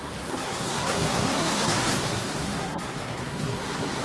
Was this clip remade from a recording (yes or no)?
yes